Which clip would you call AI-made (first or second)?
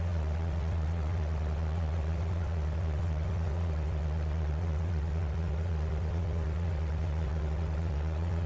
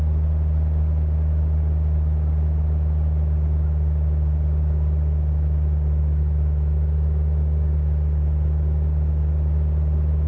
first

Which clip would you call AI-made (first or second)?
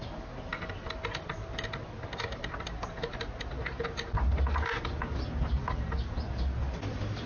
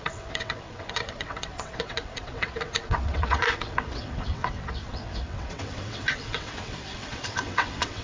second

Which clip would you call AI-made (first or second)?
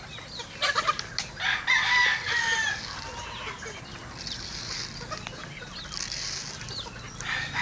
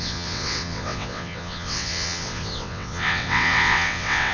second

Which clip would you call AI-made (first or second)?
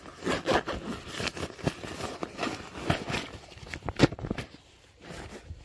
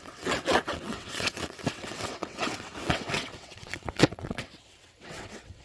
second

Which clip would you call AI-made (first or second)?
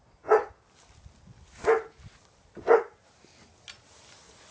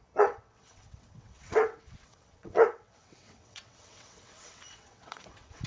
second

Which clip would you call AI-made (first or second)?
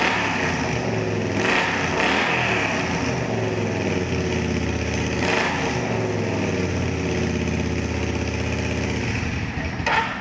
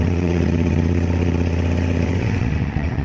second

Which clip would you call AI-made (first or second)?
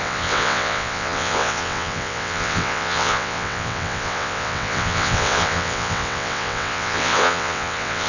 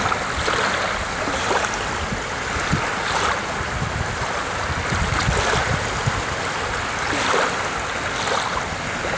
first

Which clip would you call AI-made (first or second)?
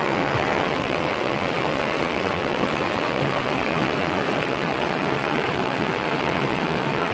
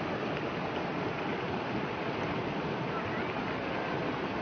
first